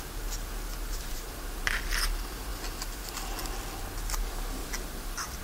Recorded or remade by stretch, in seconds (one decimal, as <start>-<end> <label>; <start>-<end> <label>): 0.0-0.7 recorded; 0.7-1.8 remade; 1.8-4.6 recorded; 4.6-5.4 remade